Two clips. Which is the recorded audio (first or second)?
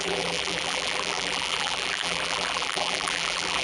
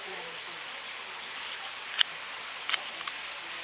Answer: second